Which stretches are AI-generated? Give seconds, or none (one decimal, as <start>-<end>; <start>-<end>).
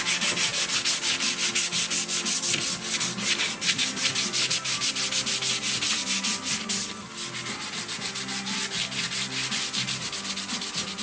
none